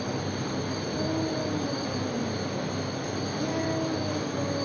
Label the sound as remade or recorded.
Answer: recorded